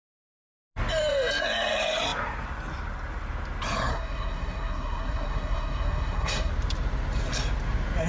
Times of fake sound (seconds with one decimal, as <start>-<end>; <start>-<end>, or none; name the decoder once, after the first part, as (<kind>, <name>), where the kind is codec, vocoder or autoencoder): 3.9-6.5 (codec, SNAC)